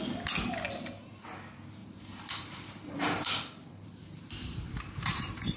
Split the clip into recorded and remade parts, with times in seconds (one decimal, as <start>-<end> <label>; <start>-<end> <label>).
0.0-1.8 recorded; 1.8-5.6 remade